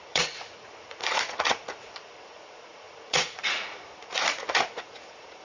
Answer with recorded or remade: remade